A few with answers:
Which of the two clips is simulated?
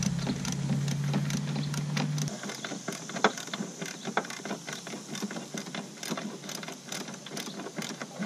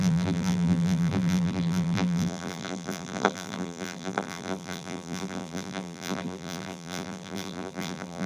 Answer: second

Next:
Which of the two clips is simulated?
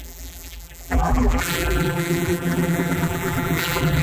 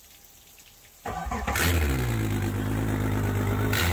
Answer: first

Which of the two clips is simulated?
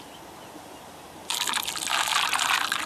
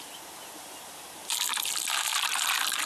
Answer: second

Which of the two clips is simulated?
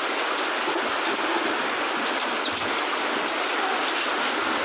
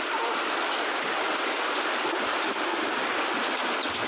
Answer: second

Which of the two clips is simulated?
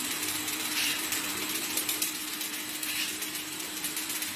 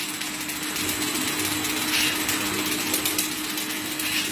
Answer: first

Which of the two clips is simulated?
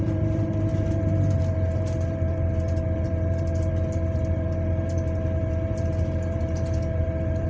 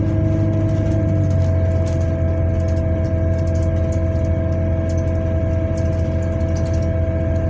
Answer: first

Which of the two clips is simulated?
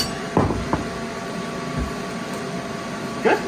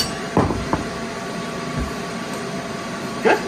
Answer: second